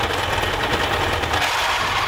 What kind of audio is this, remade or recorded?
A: recorded